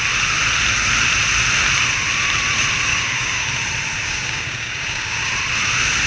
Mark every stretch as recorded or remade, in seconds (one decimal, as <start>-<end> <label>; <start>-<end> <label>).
0.0-2.9 recorded; 2.9-3.5 remade; 3.5-3.9 recorded; 3.9-5.3 remade; 5.3-6.1 recorded